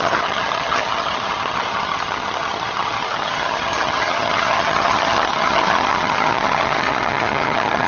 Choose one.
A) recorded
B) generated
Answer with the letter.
B